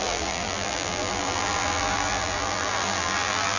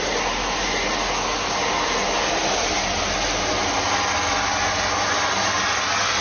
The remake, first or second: first